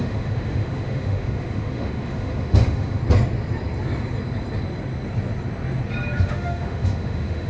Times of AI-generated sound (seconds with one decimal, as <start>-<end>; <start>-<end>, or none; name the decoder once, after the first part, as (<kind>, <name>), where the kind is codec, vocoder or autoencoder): 0.0-3.0 (autoencoder, DAC-VAE); 6.2-7.5